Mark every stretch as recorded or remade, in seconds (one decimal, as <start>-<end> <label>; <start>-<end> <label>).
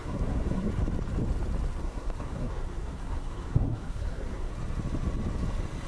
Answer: 0.0-0.7 remade; 0.7-1.8 recorded; 1.8-4.5 remade; 4.5-5.9 recorded